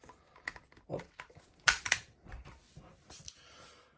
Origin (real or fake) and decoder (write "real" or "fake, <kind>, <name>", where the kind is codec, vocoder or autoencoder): real